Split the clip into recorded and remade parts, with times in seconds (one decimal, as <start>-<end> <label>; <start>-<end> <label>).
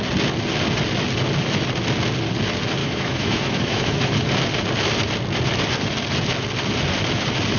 0.0-2.8 recorded; 2.8-4.3 remade; 4.3-7.6 recorded